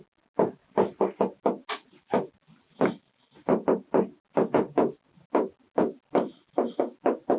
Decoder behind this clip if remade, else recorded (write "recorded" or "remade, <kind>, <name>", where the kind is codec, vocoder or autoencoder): recorded